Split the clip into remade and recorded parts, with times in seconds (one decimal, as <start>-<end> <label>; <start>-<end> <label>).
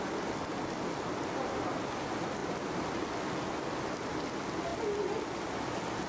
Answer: 0.0-6.1 recorded